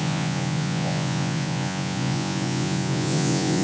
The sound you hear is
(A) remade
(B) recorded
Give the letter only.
A